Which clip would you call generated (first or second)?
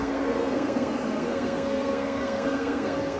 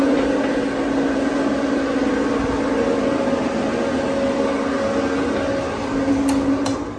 first